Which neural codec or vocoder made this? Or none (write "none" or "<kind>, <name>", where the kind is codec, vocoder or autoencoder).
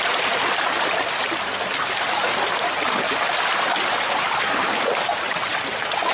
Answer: none